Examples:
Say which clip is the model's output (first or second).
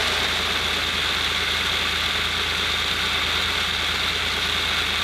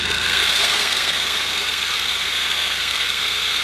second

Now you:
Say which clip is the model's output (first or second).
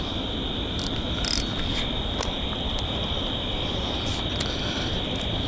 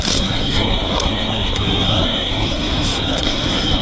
second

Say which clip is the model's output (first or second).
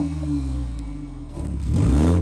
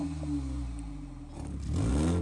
first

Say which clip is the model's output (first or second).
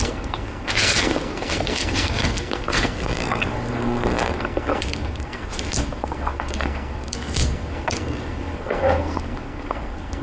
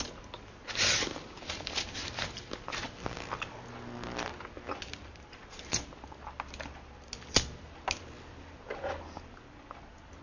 first